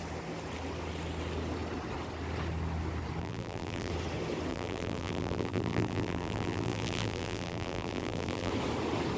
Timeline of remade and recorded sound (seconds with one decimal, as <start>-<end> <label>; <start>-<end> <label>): 0.0-3.2 recorded; 3.2-3.9 remade; 3.9-4.5 recorded; 4.5-8.5 remade; 8.5-9.2 recorded

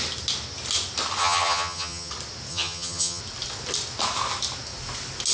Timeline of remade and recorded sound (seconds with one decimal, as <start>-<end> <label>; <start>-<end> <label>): 0.0-1.2 recorded; 1.2-2.1 remade; 2.1-2.5 recorded; 2.5-3.2 remade; 3.2-5.3 recorded

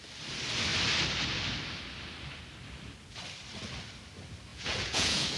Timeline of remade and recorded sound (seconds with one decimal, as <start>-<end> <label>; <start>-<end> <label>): 0.0-4.5 recorded; 4.5-5.4 remade

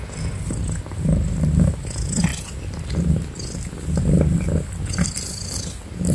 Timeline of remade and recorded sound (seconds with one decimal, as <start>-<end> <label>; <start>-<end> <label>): 0.0-6.1 recorded